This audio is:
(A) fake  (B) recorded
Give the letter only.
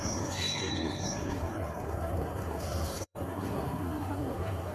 A